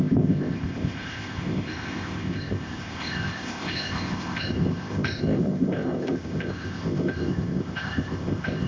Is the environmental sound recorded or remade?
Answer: remade